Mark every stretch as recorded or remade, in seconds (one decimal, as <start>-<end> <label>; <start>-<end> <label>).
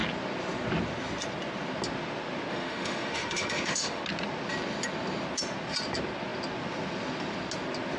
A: 0.0-2.5 recorded; 2.5-4.0 remade; 4.0-8.0 recorded